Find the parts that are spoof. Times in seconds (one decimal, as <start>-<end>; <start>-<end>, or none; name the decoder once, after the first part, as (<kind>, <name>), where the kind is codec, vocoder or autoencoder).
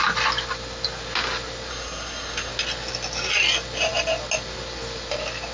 1.7-2.5 (codec, SNAC)